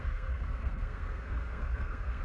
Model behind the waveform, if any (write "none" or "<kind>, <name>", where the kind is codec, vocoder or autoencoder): codec, SNAC